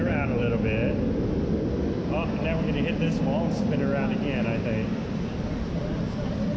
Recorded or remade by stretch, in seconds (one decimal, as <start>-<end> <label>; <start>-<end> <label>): 0.0-6.6 recorded